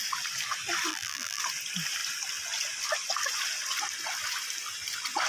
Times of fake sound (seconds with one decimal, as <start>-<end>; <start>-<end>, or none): 0.9-1.4